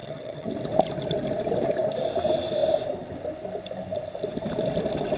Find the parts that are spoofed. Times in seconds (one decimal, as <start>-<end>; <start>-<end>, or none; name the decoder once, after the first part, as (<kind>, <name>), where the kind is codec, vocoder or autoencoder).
0.0-0.5 (vocoder, HiFi-GAN)